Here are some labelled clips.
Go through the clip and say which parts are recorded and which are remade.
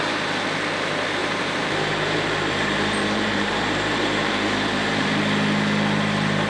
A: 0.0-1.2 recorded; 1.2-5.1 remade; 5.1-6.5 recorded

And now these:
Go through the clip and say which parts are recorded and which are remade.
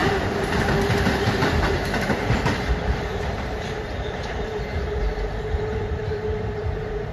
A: 0.0-1.2 recorded; 1.2-7.1 remade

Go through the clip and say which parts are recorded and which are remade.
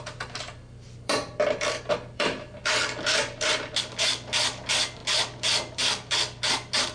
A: 0.0-6.9 remade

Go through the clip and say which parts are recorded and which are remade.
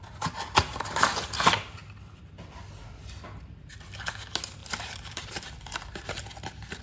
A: 0.0-4.6 recorded; 4.6-5.4 remade; 5.4-6.8 recorded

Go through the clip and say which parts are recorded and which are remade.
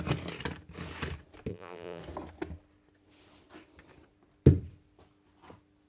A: 0.0-1.5 recorded; 1.5-2.0 remade; 2.0-5.9 recorded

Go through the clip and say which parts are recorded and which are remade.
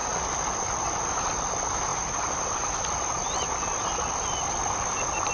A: 0.0-5.3 recorded